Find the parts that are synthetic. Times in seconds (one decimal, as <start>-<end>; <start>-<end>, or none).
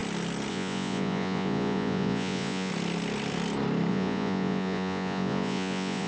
0.5-2.7; 3.9-6.1